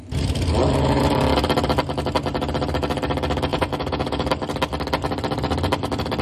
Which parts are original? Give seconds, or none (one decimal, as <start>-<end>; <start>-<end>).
0.0-3.5; 4.3-6.2